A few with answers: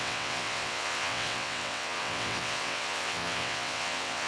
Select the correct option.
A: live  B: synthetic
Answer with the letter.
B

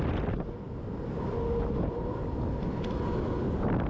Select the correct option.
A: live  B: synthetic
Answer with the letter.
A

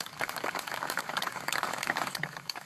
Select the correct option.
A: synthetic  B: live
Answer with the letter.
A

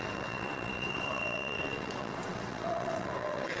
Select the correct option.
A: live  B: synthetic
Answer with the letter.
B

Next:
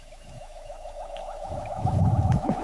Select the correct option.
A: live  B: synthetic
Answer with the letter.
B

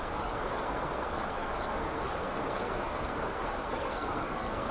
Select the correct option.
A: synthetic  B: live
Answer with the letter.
A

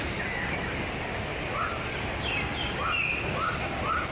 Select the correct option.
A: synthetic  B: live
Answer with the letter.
B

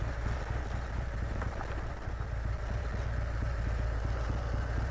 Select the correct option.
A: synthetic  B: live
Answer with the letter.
B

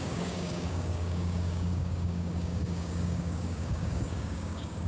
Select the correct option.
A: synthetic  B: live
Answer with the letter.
A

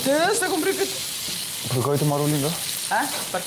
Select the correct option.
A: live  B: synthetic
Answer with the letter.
A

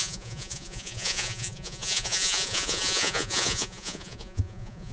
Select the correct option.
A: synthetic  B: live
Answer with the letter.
A